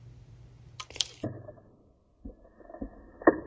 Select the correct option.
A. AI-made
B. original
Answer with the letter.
B